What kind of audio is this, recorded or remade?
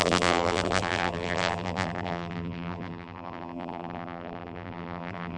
remade